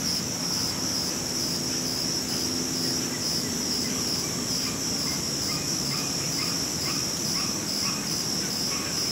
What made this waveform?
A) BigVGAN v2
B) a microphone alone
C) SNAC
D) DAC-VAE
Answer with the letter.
B